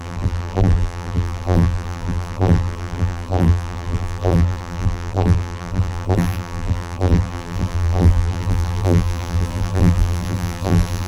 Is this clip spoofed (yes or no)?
yes